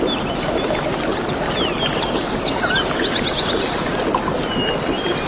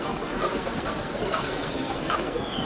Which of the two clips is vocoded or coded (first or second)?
second